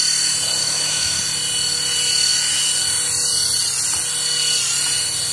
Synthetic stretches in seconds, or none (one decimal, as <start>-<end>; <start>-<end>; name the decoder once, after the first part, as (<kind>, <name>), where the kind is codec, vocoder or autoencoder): 0.6-1.2 (autoencoder, DAC-VAE)